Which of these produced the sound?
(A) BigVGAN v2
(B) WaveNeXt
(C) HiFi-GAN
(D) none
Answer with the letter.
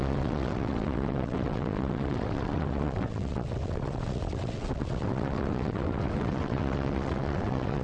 B